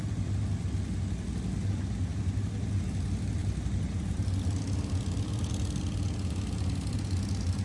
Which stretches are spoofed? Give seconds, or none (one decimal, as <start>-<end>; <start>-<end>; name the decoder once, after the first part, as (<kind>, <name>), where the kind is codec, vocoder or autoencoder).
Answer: 3.4-5.5 (vocoder, BigVGAN v2)